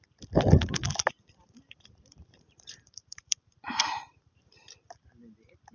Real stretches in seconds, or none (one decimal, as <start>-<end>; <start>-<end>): 0.0-1.4; 4.8-5.7